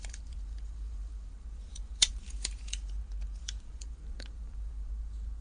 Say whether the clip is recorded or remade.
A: remade